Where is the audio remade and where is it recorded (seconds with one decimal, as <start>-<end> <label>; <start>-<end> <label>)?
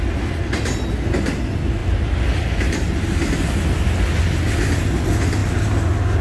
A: 0.0-1.8 recorded; 1.8-3.6 remade; 3.6-6.2 recorded